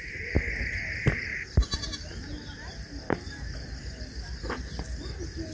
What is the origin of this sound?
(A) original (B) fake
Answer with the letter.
A